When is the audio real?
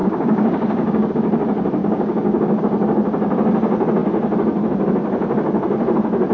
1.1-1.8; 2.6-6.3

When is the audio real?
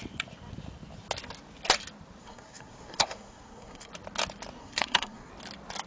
0.0-2.2; 3.9-4.6; 5.3-5.9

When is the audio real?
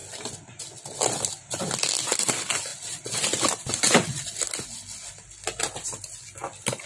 0.0-6.9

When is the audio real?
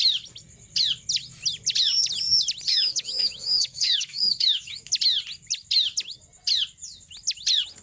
0.0-2.7; 4.9-7.8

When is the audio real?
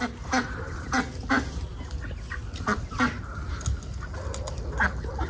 0.0-5.3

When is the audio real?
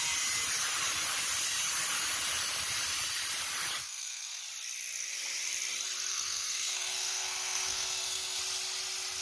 0.0-3.8; 4.4-6.1; 8.4-9.2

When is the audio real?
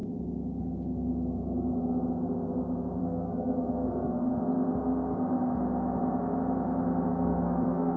0.0-3.0; 4.3-7.1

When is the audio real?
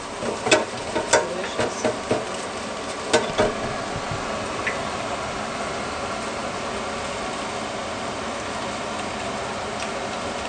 0.0-10.5